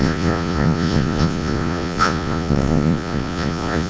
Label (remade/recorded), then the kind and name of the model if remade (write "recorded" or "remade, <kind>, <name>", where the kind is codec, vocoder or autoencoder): remade, vocoder, Vocos